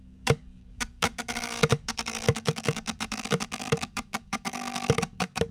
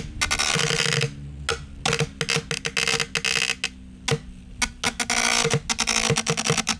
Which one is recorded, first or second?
second